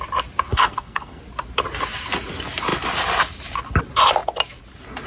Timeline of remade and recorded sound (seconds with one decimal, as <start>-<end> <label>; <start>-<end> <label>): 0.0-0.5 recorded; 0.5-1.2 remade; 1.2-5.1 recorded